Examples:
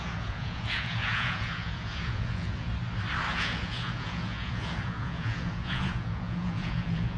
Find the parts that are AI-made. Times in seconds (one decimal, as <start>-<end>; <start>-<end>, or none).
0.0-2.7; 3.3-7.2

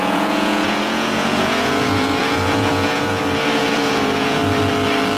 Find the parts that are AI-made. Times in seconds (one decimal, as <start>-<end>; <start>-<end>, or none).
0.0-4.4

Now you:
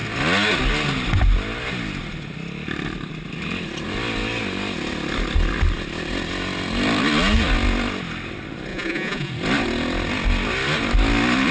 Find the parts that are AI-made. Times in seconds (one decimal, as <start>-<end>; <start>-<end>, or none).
8.7-9.3